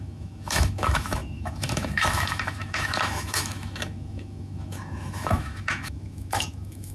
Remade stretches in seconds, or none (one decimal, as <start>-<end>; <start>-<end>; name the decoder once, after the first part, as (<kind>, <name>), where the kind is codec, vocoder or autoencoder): 0.0-6.9 (autoencoder, DAC-VAE)